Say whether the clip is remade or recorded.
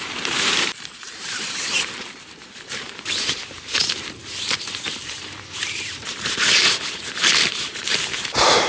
remade